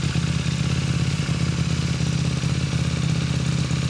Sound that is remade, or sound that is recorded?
recorded